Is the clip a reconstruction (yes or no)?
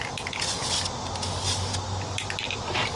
no